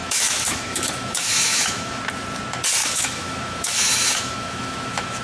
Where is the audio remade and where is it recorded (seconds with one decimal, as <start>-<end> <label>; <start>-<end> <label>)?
0.0-2.0 remade; 2.0-2.8 recorded; 2.8-5.2 remade